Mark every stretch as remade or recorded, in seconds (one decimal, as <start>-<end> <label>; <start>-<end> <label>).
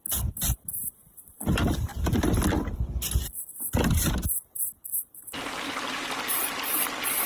0.0-7.3 recorded